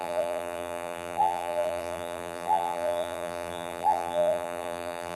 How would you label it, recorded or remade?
remade